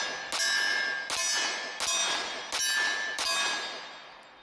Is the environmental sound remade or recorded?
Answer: recorded